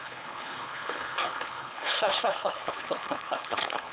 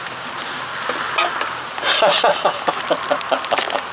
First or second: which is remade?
first